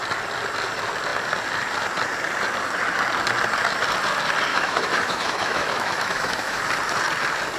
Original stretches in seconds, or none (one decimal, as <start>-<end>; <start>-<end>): 0.0-4.5; 6.6-7.6